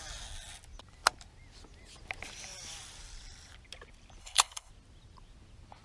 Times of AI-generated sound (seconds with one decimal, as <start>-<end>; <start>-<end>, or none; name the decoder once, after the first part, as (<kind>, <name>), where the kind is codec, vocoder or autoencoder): 4.2-4.7 (codec, HILCodec)

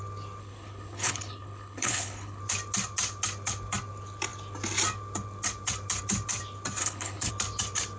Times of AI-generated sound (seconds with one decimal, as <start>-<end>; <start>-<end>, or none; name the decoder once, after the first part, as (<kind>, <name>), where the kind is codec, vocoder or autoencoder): 0.4-2.4 (codec, HILCodec); 6.8-7.3

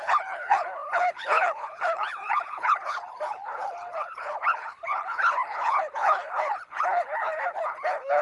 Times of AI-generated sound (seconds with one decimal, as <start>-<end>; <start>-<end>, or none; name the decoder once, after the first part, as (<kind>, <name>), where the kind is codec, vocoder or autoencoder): 0.0-8.2 (codec, HILCodec)

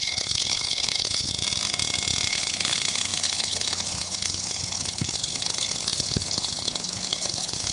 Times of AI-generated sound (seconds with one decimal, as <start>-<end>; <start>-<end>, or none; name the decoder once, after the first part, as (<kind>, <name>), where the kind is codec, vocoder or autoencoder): 0.0-1.3 (codec, HILCodec); 2.3-7.7

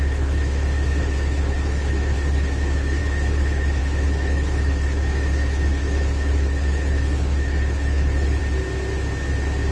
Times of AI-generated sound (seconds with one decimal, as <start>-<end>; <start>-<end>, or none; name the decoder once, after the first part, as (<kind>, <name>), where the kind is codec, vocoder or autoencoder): 0.0-8.4 (codec, HILCodec)

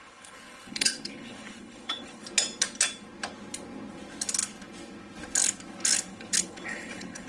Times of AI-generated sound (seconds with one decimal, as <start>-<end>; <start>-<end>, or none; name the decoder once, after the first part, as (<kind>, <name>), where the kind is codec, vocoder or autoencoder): 0.0-2.2 (codec, HILCodec); 6.1-7.3